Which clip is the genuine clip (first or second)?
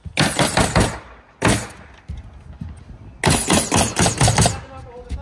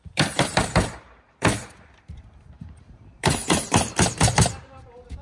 first